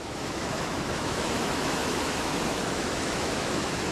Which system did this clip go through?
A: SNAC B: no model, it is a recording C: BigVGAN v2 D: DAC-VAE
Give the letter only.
D